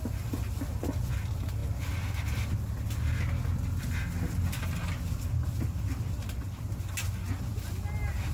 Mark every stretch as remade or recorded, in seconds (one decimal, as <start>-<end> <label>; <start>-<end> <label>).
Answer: 0.0-8.3 recorded